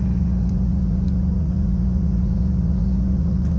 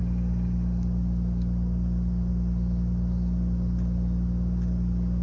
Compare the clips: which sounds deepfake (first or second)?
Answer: first